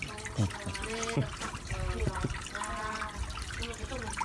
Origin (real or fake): real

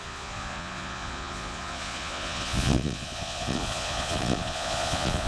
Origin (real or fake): fake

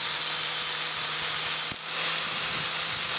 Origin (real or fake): real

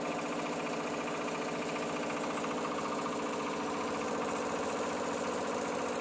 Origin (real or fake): real